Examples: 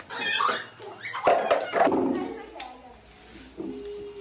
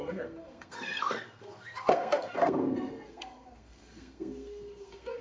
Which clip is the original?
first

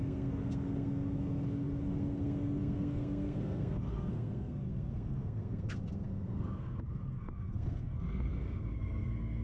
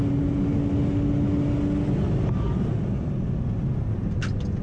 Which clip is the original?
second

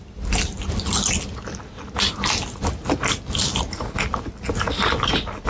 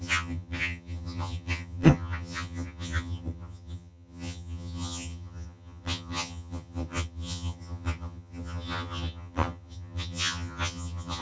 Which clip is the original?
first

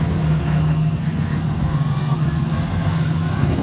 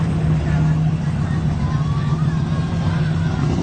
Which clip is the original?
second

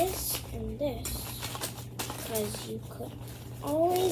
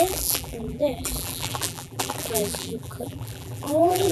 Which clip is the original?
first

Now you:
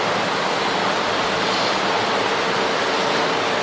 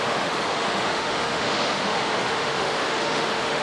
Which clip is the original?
first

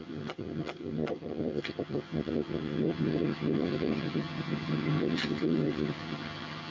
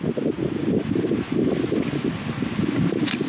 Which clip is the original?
second